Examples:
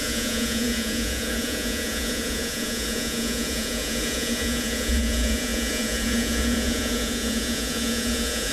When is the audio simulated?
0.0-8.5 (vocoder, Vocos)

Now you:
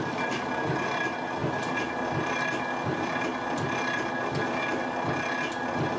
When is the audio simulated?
none

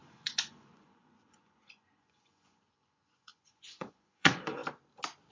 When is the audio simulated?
0.0-4.6 (vocoder, Vocos)

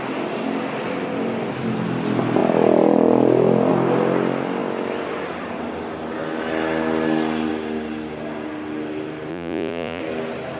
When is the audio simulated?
9.3-10.0 (vocoder, Vocos)

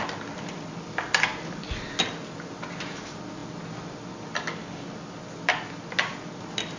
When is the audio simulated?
none

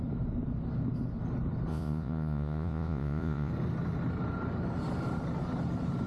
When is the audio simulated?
1.7-3.5 (vocoder, Vocos)

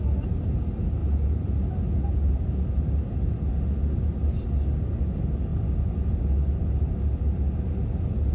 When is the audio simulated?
none